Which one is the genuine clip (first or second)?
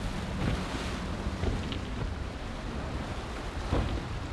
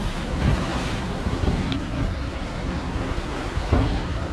first